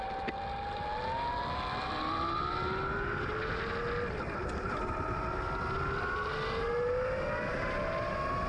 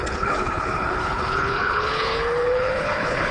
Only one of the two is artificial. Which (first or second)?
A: second